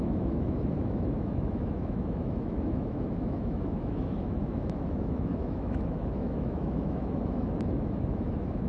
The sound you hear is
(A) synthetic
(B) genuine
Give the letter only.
A